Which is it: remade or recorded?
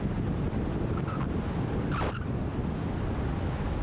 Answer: recorded